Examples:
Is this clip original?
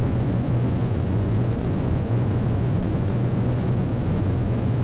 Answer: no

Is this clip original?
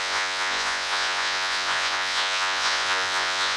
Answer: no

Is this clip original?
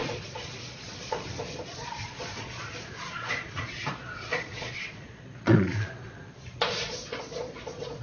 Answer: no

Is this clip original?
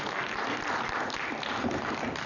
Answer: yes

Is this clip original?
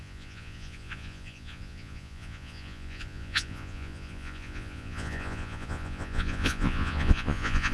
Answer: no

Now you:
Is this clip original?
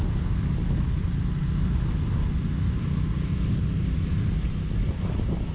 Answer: yes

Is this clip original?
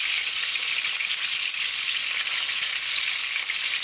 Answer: yes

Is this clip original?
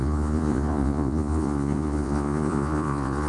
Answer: no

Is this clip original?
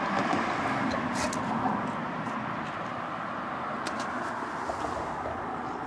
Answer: yes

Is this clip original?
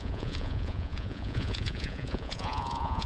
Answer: no